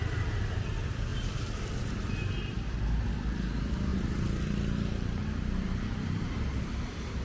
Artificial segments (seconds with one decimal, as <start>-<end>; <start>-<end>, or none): 1.1-2.8; 3.9-7.2